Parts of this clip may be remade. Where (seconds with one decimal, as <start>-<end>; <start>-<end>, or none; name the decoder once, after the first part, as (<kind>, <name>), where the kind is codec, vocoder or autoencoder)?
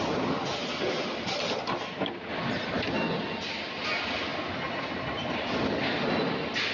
none